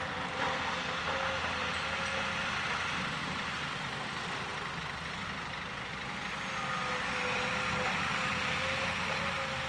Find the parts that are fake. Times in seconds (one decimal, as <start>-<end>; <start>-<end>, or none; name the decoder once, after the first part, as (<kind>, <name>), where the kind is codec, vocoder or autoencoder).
3.2-3.7 (vocoder, BigVGAN v2)